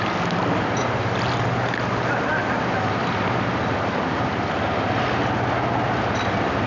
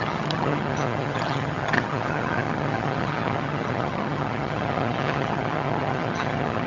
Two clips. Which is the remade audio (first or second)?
second